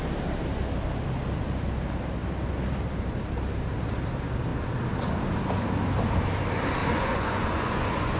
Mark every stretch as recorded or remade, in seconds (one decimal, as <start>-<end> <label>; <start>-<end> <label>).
0.0-6.8 recorded; 6.8-8.2 remade